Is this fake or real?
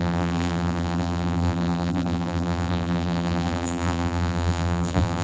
fake